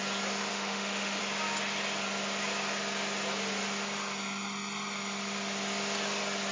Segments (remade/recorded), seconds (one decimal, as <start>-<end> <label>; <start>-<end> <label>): 0.0-0.5 recorded; 0.5-1.2 remade; 1.2-6.5 recorded